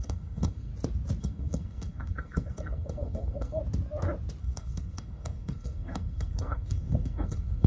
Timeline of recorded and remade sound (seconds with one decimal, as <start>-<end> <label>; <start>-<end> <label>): 0.0-0.7 remade; 0.7-1.2 recorded; 1.2-3.6 remade; 3.6-4.4 recorded; 4.4-7.7 remade